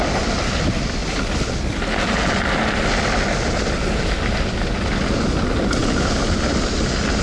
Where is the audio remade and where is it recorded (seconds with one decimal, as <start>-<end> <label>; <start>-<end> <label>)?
0.0-7.2 recorded